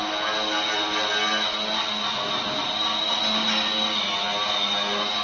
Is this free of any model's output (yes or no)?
yes